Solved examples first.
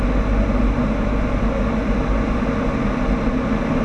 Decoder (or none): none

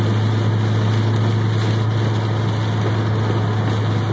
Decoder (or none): none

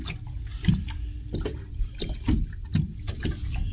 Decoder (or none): none